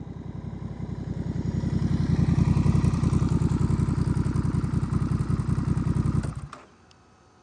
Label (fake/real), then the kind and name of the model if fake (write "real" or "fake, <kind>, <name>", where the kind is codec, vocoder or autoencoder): real